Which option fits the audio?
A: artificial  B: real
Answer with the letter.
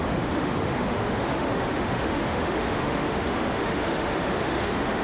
A